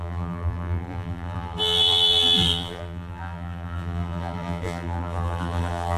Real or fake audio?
fake